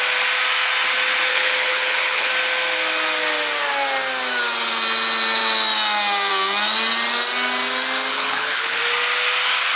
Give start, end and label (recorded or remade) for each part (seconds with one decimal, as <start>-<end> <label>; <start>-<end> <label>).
0.0-1.3 recorded; 1.3-2.3 remade; 2.3-8.1 recorded; 8.1-8.8 remade; 8.8-9.8 recorded

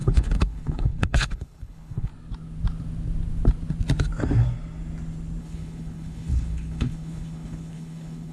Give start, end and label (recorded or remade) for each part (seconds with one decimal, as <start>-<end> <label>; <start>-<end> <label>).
0.0-2.1 remade; 2.1-5.4 recorded; 5.4-8.3 remade

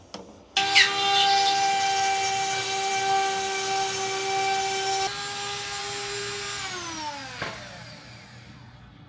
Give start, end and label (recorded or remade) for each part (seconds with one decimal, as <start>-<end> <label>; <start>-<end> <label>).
0.0-9.1 recorded